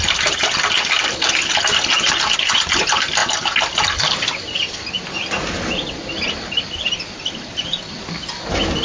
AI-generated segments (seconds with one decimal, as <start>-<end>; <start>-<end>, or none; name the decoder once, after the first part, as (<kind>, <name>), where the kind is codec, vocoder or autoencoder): 0.0-3.2 (vocoder, BigVGAN v2); 4.8-8.8

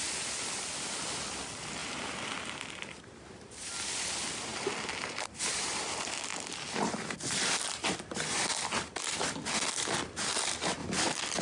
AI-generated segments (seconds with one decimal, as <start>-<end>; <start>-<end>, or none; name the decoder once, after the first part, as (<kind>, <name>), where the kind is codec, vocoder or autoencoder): 0.0-1.8 (vocoder, BigVGAN v2); 2.6-11.4

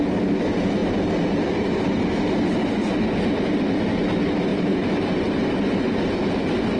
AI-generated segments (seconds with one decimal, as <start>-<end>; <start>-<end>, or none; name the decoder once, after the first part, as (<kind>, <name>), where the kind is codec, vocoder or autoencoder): none

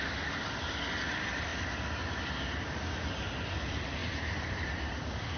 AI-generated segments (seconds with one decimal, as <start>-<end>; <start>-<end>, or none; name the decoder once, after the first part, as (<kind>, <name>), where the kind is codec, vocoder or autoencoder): 4.0-4.7 (vocoder, BigVGAN v2)

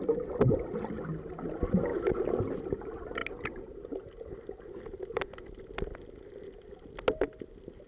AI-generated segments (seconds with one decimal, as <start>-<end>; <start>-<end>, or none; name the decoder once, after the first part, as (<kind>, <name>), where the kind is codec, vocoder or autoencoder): none